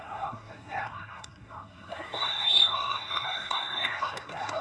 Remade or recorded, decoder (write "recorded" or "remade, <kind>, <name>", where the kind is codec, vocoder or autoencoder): remade, codec, SNAC